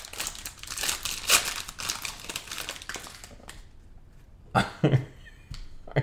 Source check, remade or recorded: recorded